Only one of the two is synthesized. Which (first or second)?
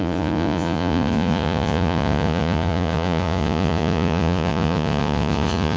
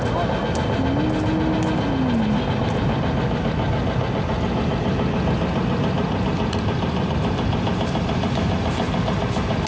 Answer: first